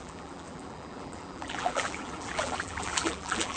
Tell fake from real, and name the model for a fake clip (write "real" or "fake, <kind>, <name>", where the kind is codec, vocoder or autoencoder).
fake, vocoder, BigVGAN v2